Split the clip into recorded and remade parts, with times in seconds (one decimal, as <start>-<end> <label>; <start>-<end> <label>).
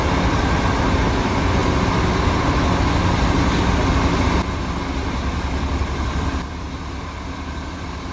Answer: 0.0-8.1 recorded